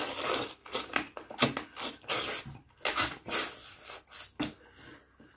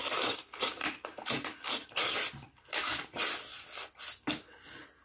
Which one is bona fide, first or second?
first